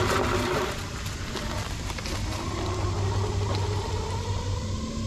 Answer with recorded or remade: recorded